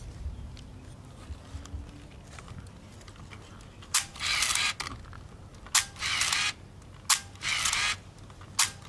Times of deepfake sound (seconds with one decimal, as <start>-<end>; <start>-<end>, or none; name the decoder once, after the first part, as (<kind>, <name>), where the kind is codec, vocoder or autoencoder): none

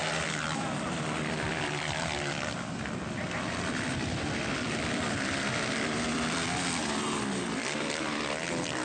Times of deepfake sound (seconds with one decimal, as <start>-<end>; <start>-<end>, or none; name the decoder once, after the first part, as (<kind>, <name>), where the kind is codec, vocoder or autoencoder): none